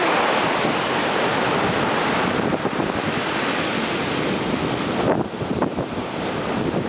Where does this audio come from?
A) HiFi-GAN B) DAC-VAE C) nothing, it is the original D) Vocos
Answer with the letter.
C